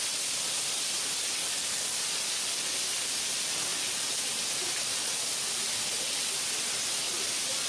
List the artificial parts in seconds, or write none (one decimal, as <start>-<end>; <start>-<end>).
none